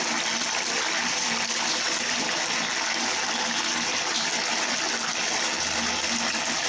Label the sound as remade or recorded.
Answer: recorded